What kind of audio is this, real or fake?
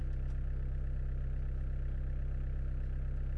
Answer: real